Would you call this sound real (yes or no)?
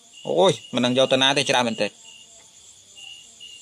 no